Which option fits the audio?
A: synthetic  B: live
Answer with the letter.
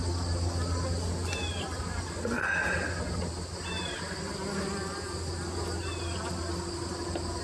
B